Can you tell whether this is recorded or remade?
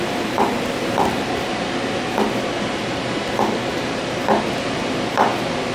recorded